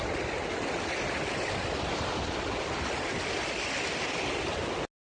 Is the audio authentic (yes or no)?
yes